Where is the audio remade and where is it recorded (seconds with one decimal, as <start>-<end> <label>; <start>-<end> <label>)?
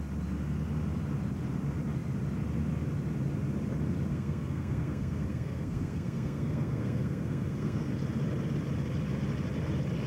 0.0-4.1 recorded; 4.1-7.9 remade; 7.9-10.1 recorded